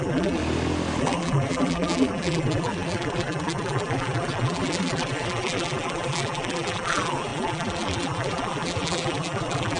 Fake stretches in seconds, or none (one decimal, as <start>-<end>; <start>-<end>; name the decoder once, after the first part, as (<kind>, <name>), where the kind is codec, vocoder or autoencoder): 0.0-0.4 (vocoder, BigVGAN v2); 1.0-9.8

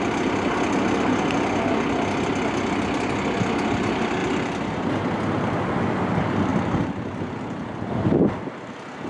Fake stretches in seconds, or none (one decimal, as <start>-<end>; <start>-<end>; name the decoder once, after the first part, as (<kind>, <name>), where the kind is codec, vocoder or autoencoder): 6.5-7.4 (vocoder, BigVGAN v2)

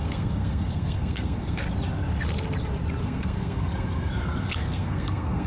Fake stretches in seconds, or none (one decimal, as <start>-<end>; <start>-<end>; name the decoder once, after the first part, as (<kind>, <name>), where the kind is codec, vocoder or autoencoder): 0.0-1.6 (codec, SNAC); 3.0-5.5

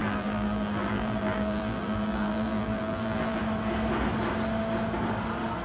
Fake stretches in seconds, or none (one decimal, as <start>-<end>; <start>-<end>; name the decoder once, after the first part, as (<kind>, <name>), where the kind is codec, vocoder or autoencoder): 0.0-3.4 (vocoder, BigVGAN v2)